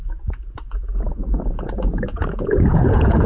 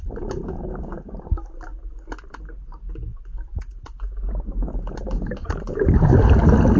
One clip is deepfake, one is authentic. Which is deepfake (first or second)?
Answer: first